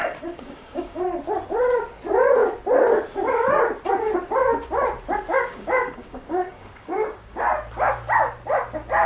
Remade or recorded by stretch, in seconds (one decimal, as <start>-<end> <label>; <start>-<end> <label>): 0.0-1.0 remade; 1.0-5.3 recorded; 5.3-7.4 remade; 7.4-9.1 recorded